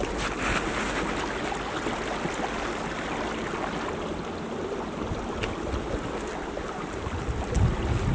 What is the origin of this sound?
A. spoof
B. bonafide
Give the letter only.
B